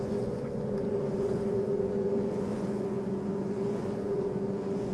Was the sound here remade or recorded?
remade